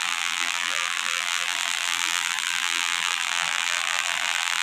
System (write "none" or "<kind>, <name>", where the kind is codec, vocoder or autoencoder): vocoder, BigVGAN v2